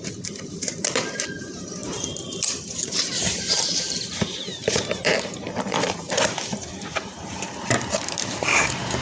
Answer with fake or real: fake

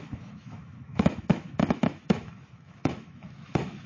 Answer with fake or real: fake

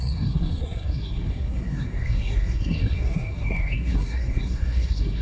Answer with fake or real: fake